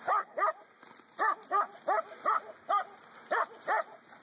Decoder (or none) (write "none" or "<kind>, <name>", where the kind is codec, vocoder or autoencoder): none